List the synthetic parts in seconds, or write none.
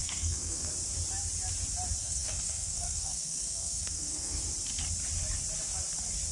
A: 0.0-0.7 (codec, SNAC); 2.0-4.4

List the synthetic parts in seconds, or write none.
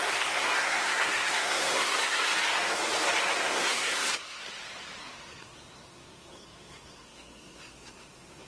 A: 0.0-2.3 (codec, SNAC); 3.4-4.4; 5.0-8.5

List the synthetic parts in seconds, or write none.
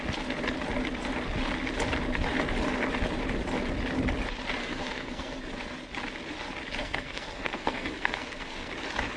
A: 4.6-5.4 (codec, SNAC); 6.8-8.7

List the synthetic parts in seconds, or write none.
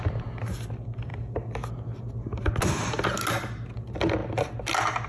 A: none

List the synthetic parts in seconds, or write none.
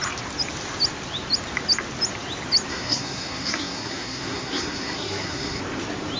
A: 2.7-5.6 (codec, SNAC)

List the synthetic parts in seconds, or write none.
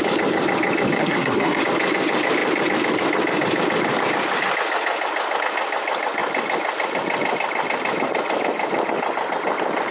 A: 1.0-1.6 (codec, SNAC)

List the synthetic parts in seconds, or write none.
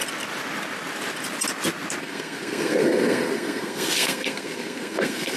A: 2.0-5.4 (codec, SNAC)